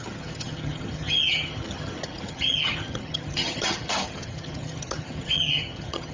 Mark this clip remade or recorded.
remade